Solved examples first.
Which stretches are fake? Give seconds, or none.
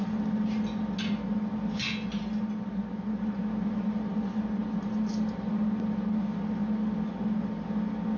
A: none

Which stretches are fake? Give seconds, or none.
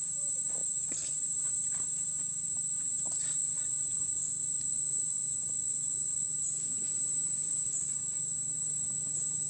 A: 3.4-6.3 (vocoder, Vocos); 7.4-8.0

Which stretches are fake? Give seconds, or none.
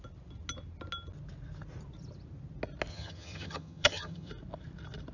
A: 2.9-4.3 (vocoder, HiFi-GAN)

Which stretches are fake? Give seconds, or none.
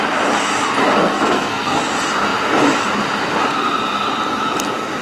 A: 0.8-1.8 (codec, SNAC)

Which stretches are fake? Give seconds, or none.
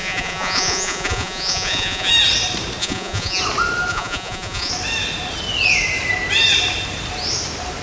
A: 0.0-2.1 (vocoder, Vocos); 2.8-3.4; 3.9-4.7